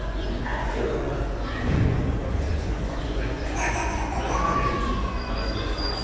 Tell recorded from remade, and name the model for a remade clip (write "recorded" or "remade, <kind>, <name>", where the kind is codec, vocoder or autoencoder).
remade, vocoder, Vocos